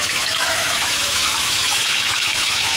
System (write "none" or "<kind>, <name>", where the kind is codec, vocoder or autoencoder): autoencoder, DAC-VAE